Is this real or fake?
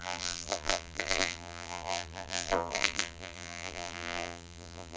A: fake